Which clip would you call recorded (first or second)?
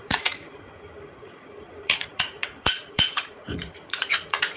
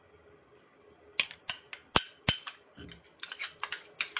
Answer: second